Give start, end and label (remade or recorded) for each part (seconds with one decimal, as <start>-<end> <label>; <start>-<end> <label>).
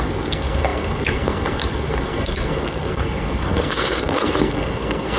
0.0-5.2 remade